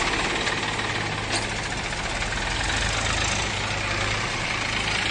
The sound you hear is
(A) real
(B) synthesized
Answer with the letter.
A